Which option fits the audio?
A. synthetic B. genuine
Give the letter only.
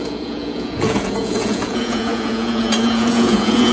A